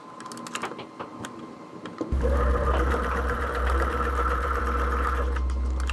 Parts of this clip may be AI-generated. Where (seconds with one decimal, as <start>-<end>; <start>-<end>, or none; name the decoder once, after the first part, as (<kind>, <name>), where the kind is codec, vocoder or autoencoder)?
1.1-4.6 (vocoder, BigVGAN v2)